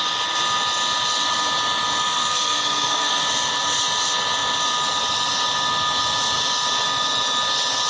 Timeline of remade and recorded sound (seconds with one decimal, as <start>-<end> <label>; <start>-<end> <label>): 0.0-2.1 recorded; 2.1-3.2 remade; 3.2-7.9 recorded